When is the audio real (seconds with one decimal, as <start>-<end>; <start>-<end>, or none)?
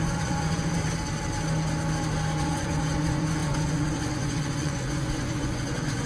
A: 0.8-2.4